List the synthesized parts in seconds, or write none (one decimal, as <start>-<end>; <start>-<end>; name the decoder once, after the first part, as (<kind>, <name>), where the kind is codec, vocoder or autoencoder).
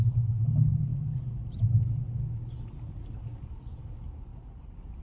none